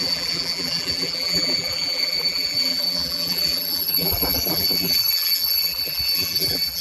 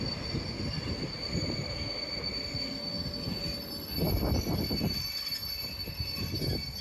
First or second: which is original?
second